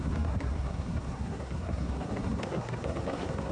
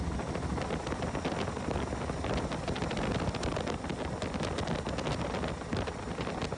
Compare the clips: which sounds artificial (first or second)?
first